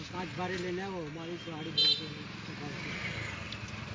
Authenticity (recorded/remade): recorded